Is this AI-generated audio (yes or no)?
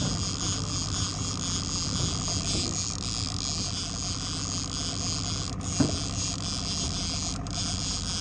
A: no